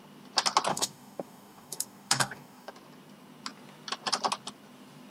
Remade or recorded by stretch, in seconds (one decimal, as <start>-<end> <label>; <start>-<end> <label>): 0.0-0.7 recorded; 0.7-2.7 remade; 2.7-5.1 recorded